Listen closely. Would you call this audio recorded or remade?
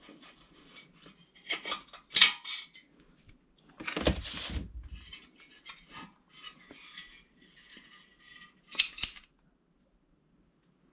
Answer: recorded